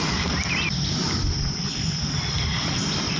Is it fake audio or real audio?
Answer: real